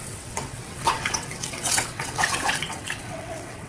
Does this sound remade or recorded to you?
remade